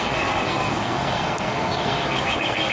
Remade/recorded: remade